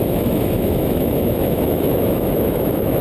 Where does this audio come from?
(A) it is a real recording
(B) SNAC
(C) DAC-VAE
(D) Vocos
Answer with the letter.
C